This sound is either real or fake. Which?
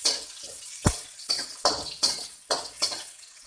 fake